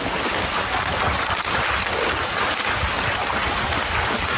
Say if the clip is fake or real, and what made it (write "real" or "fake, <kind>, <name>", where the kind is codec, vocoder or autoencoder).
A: real